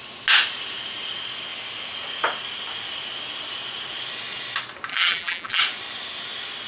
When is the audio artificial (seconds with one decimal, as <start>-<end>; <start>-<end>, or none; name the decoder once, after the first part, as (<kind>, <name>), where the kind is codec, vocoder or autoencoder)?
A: 4.9-5.6 (vocoder, BigVGAN v2)